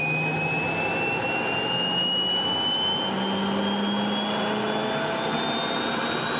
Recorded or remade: recorded